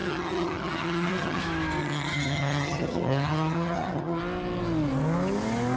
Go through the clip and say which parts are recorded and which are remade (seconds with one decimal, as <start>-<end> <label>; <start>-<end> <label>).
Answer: 0.0-1.4 remade; 1.4-1.8 recorded; 1.8-4.2 remade; 4.2-5.8 recorded